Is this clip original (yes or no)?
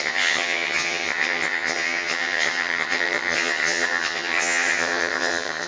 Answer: no